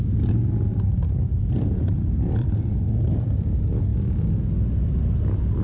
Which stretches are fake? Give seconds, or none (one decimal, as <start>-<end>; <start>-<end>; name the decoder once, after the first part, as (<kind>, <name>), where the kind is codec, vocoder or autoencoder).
0.7-2.5 (vocoder, BigVGAN v2)